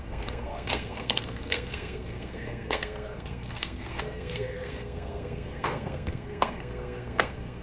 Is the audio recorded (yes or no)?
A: no